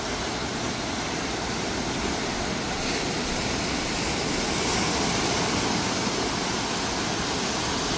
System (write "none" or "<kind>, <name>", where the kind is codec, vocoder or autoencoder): none